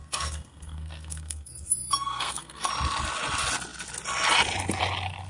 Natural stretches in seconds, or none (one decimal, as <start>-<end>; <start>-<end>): 2.7-5.3